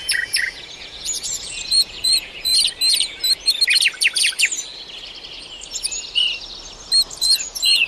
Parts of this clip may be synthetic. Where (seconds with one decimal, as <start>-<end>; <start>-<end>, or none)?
0.0-2.5; 7.2-7.9